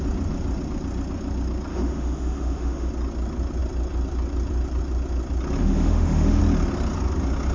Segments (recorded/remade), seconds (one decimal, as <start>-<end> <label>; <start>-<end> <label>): 0.0-1.7 recorded; 1.7-2.9 remade; 2.9-5.6 recorded; 5.6-6.4 remade; 6.4-7.5 recorded

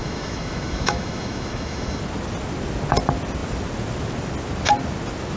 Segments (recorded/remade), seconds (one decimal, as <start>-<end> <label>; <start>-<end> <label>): 0.0-2.0 remade; 2.0-5.4 recorded